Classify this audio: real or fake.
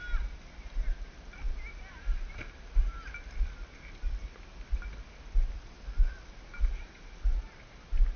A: real